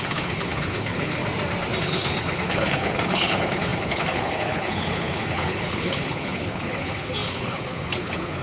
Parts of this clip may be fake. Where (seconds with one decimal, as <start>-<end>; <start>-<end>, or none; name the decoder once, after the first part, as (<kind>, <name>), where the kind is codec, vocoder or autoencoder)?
0.0-1.2 (codec, HILCodec); 1.8-8.4